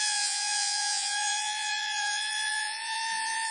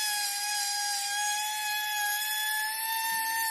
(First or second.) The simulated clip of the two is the first